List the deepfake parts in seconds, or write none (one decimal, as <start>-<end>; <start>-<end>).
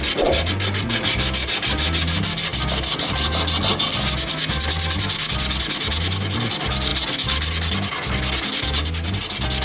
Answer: none